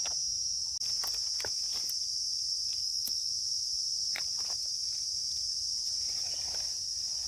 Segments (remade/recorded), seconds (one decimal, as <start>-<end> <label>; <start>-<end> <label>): 0.0-2.8 recorded; 2.8-3.3 remade; 3.3-7.3 recorded